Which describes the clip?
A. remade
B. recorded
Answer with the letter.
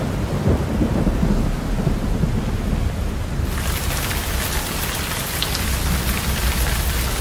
B